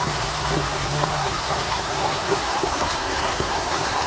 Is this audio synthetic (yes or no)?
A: yes